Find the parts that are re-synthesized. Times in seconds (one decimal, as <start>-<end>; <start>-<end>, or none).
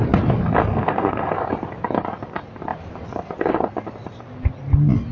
0.7-1.3